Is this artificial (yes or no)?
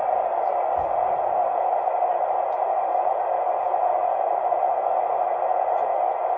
no